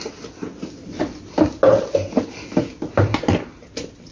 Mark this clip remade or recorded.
recorded